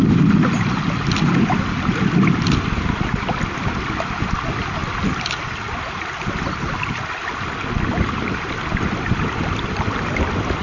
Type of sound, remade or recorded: recorded